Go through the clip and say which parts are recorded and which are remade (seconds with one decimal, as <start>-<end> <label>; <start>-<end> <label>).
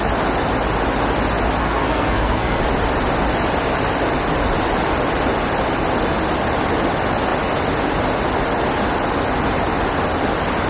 0.0-1.6 recorded; 1.6-2.6 remade; 2.6-10.7 recorded